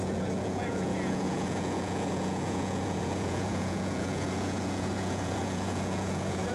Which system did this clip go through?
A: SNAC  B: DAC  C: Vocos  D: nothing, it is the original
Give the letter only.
C